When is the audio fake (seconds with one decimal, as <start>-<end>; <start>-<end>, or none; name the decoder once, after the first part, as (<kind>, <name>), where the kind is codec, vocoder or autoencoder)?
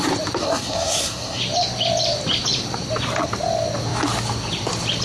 0.4-1.4 (codec, SNAC)